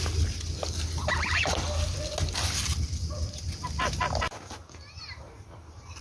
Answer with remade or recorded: recorded